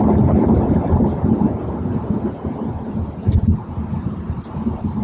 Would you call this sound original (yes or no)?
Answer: yes